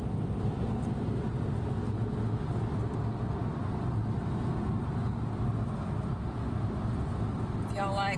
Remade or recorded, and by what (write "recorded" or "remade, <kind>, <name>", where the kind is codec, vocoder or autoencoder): recorded